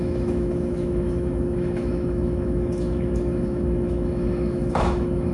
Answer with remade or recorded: remade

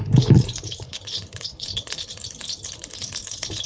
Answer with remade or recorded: remade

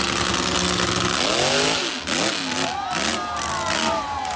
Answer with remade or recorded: recorded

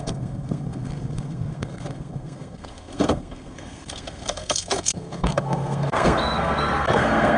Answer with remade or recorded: remade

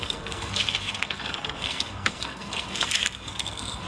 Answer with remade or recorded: remade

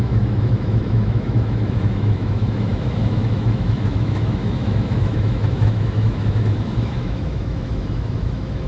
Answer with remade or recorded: remade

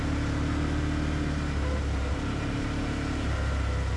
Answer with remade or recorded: recorded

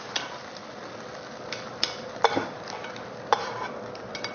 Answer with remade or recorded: recorded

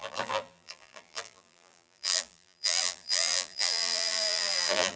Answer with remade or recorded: remade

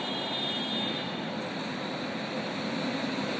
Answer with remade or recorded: recorded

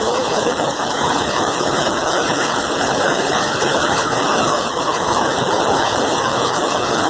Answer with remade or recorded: remade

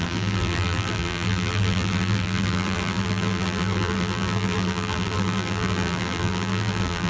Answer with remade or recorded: remade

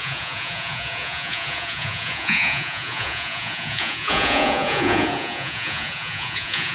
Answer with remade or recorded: remade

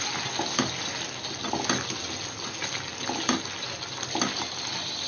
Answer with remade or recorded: recorded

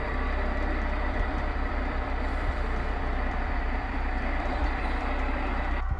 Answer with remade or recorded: remade